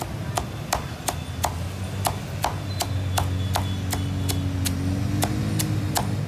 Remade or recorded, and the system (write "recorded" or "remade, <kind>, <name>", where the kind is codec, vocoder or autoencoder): recorded